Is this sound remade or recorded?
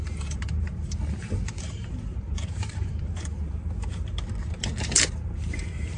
remade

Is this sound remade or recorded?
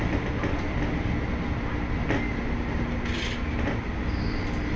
recorded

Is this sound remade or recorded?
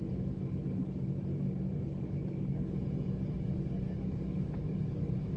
remade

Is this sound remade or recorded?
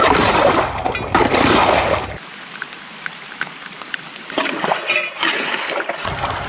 recorded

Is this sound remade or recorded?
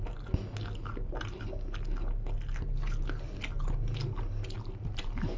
recorded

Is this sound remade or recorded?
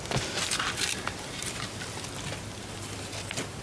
recorded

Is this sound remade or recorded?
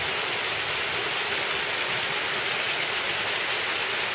recorded